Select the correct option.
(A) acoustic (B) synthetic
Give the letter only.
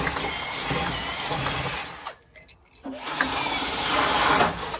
A